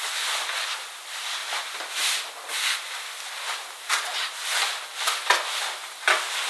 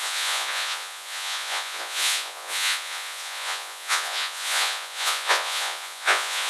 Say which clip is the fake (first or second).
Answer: second